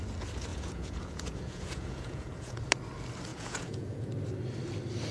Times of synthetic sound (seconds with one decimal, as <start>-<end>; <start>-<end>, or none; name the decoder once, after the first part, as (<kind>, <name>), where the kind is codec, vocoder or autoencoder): 0.5-2.6 (vocoder, Vocos); 3.3-4.1